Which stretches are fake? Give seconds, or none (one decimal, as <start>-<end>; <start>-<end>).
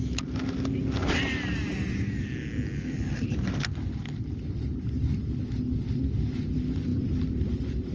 none